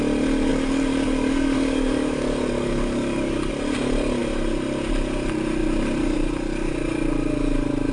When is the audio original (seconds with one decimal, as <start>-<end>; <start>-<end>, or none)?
0.0-0.5; 3.5-7.9